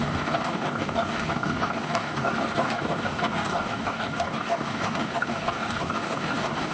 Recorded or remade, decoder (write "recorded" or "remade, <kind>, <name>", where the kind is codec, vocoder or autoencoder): remade, codec, DAC